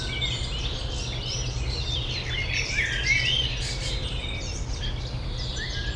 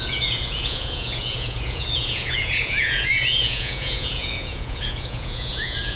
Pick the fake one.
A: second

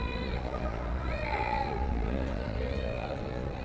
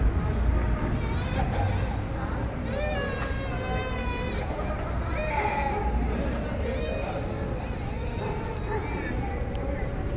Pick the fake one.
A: first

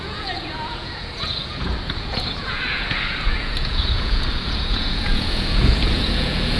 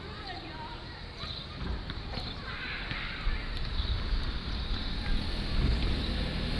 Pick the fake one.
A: first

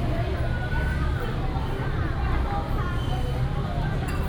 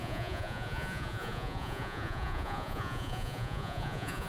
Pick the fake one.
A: second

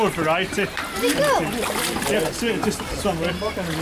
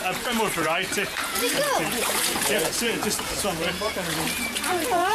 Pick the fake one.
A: second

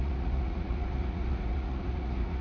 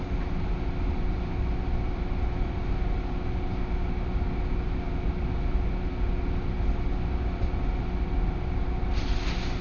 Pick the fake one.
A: first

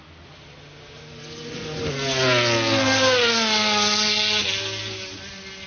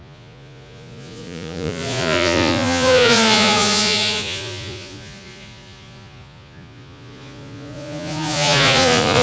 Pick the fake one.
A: second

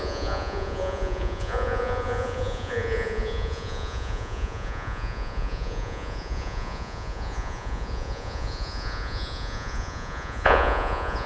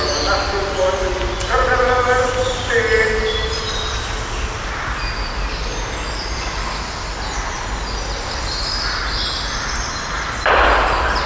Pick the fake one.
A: first